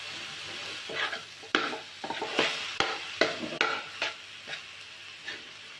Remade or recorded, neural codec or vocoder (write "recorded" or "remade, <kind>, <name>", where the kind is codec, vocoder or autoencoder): recorded